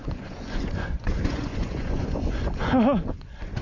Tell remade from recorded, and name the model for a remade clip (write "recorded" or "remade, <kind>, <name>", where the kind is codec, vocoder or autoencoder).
remade, vocoder, Vocos